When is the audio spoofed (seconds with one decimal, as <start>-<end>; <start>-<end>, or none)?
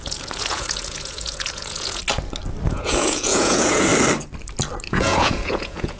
0.0-2.0; 2.7-3.9; 4.9-6.0